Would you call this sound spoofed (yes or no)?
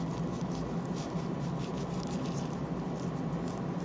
no